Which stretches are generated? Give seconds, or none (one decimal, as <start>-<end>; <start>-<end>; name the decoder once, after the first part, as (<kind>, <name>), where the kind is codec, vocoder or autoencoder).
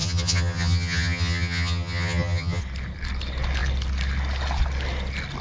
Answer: 0.0-2.6 (vocoder, HiFi-GAN)